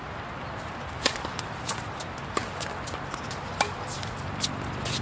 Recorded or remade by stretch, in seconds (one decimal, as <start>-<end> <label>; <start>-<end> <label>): 0.0-5.0 recorded